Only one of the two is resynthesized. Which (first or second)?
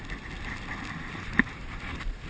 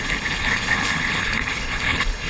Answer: second